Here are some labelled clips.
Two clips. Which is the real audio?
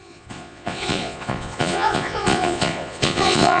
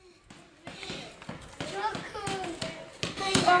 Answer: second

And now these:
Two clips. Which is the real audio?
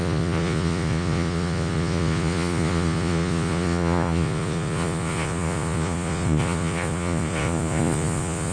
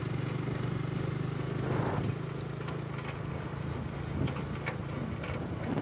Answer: second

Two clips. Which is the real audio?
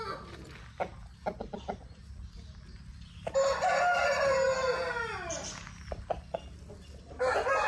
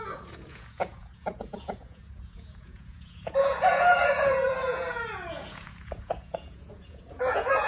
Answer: first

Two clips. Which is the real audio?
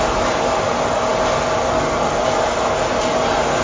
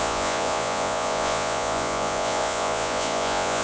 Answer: first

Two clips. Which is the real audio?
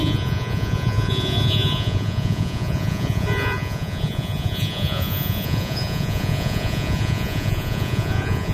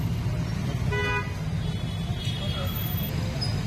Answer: second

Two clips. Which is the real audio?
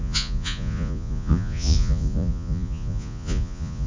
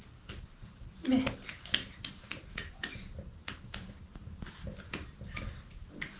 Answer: second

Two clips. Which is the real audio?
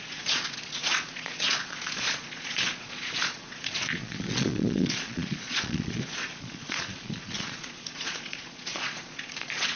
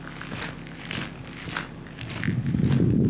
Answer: second